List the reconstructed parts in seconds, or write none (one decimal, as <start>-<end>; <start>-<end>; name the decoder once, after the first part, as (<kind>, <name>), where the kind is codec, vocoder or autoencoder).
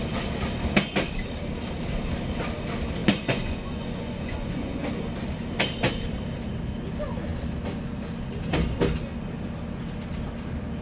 3.0-4.8 (vocoder, Vocos)